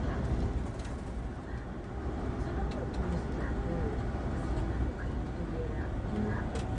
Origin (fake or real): real